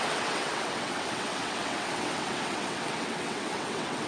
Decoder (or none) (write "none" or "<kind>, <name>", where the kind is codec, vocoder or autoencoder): vocoder, WaveNeXt